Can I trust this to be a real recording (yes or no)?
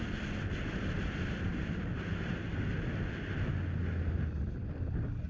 yes